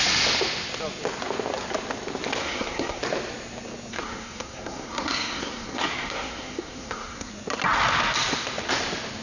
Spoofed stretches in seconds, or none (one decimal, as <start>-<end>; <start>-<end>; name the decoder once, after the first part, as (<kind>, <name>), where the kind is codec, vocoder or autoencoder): 2.4-3.0 (codec, SNAC); 3.9-7.3